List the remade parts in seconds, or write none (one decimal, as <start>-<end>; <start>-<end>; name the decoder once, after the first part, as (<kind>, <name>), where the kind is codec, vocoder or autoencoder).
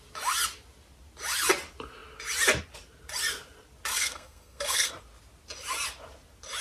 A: 3.9-4.9 (codec, SNAC)